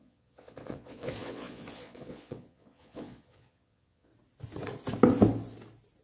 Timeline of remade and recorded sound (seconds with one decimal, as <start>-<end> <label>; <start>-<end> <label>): 0.0-4.1 remade; 4.1-6.0 recorded